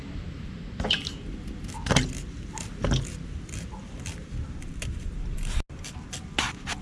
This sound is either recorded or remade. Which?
recorded